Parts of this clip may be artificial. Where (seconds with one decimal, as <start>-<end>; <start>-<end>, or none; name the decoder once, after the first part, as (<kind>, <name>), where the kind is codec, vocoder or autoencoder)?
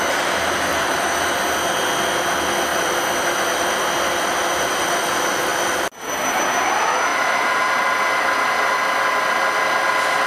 0.7-1.3 (vocoder, BigVGAN v2); 7.1-8.8